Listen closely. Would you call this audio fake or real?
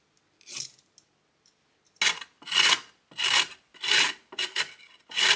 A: real